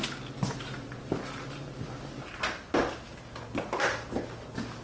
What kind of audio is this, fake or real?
real